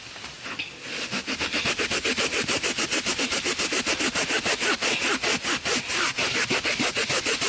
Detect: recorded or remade recorded